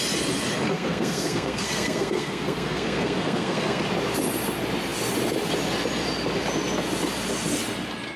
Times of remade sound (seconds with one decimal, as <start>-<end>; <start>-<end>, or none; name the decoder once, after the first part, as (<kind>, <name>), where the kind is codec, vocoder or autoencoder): 0.7-3.8 (codec, SNAC)